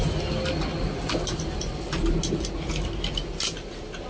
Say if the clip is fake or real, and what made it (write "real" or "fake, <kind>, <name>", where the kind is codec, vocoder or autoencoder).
real